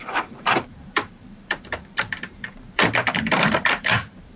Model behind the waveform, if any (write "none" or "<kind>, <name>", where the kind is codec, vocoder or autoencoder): vocoder, BigVGAN v2